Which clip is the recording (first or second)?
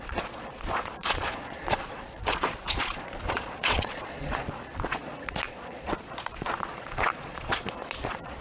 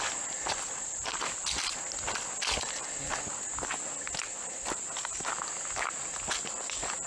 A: second